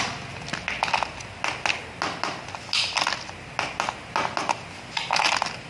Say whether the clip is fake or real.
real